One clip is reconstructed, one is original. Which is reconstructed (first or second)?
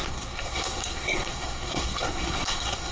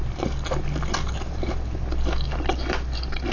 first